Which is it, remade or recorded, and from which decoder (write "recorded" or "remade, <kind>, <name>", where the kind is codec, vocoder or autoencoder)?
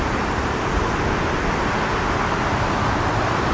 recorded